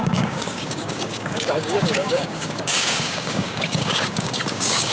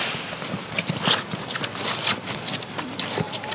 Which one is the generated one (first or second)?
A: first